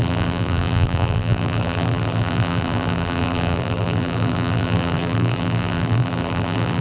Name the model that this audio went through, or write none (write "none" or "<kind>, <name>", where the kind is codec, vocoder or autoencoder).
vocoder, BigVGAN v2